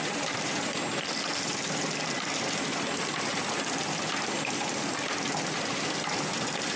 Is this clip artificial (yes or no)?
no